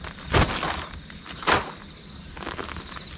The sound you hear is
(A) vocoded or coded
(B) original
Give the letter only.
B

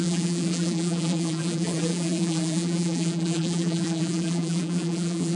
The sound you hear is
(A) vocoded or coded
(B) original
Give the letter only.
A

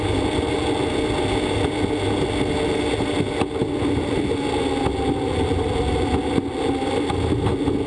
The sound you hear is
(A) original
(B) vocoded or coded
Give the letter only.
A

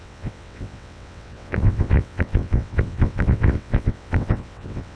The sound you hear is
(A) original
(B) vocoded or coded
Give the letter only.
B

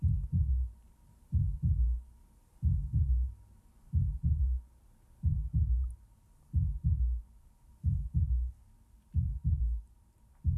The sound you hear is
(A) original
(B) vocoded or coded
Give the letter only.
B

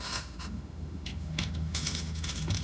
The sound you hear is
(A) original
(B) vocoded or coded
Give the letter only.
B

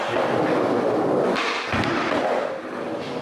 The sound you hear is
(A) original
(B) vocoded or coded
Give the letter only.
A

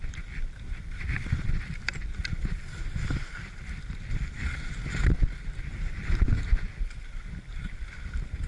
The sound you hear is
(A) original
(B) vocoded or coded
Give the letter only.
A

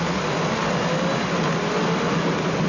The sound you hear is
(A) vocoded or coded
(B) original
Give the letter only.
B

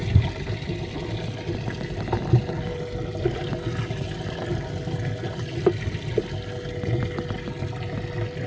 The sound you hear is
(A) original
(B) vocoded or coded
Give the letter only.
A